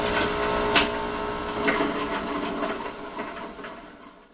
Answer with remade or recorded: recorded